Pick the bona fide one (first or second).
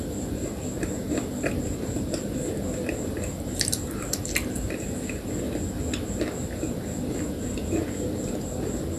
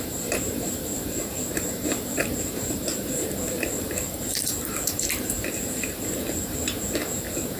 first